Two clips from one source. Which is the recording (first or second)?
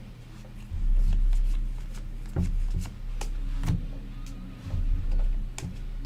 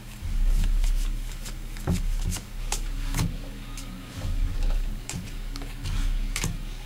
first